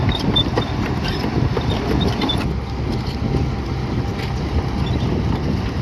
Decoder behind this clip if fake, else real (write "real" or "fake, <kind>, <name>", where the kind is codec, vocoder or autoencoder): real